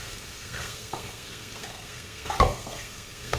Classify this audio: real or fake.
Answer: fake